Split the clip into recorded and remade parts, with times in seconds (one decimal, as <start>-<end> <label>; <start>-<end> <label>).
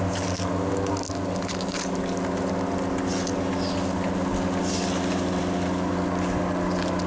0.0-7.1 recorded